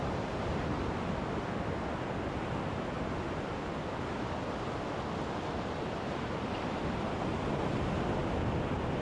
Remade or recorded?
recorded